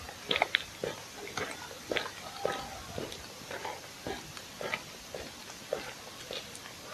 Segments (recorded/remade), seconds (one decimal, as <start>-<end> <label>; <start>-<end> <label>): 0.0-0.8 recorded; 0.8-3.2 remade; 3.2-6.9 recorded